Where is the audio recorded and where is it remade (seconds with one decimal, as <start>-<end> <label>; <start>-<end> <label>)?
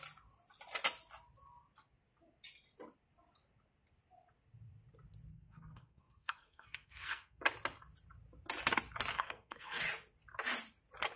0.0-5.3 recorded; 5.3-7.4 remade; 7.4-9.1 recorded; 9.1-9.8 remade; 9.8-11.2 recorded